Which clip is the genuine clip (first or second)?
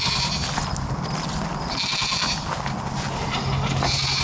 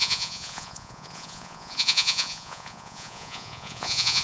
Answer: first